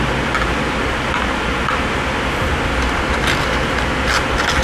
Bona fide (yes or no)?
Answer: yes